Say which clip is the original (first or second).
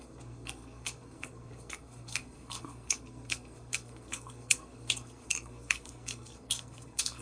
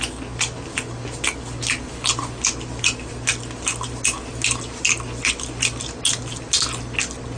second